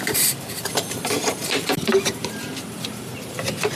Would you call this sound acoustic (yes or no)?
no